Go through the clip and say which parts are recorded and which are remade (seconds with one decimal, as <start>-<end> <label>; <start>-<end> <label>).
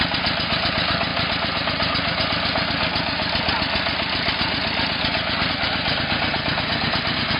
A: 0.0-7.4 recorded